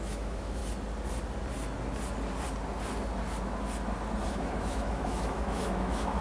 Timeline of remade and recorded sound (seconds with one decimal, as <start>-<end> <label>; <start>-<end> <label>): 0.0-0.6 remade; 0.6-4.3 recorded; 4.3-6.2 remade